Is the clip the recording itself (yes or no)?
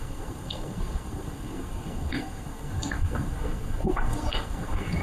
no